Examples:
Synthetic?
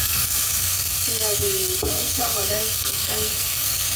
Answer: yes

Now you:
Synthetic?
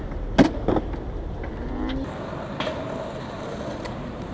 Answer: no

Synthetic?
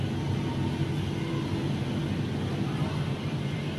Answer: no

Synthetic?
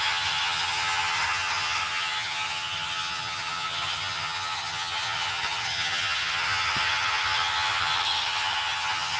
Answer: yes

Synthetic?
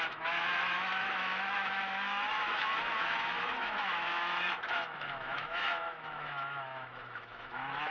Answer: yes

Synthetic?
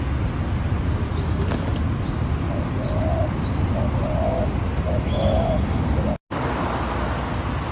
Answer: no